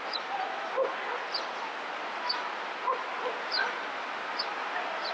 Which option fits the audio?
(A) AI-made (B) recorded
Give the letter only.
B